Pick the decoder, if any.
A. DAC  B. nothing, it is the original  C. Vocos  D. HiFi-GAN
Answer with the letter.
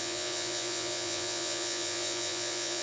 C